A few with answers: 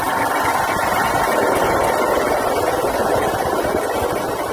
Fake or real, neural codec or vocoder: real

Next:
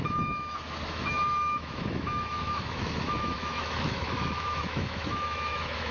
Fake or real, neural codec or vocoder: fake, autoencoder, DAC-VAE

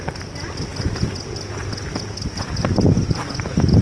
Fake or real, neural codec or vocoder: real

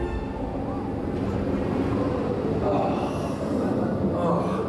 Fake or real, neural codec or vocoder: real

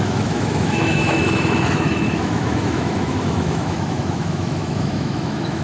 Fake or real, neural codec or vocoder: fake, autoencoder, DAC-VAE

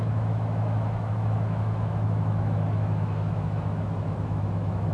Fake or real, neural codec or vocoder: fake, autoencoder, DAC-VAE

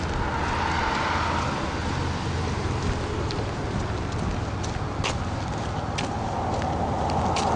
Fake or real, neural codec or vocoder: real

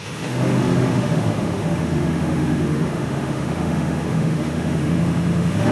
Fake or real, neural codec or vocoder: fake, autoencoder, DAC-VAE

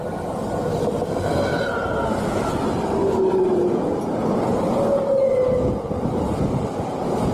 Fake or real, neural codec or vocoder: real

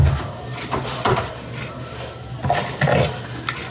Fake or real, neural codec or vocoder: real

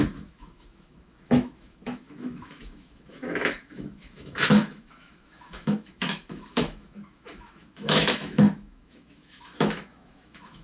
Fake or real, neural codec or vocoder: fake, autoencoder, DAC-VAE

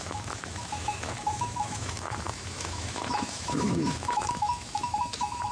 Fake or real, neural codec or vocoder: fake, autoencoder, DAC-VAE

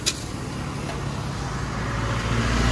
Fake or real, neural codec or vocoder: real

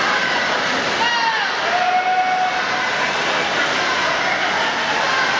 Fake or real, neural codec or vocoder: real